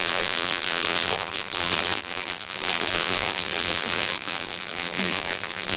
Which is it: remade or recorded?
remade